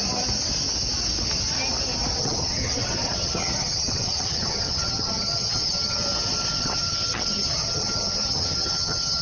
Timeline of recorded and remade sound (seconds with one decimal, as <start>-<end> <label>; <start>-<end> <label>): 0.0-2.2 recorded; 2.2-6.0 remade; 6.0-6.5 recorded; 6.5-9.2 remade